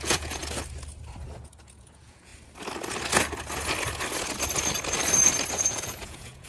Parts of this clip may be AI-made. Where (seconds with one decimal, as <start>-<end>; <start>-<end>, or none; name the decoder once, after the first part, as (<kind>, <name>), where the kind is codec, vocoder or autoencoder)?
0.0-0.4 (vocoder, Vocos); 1.6-2.3; 5.6-6.5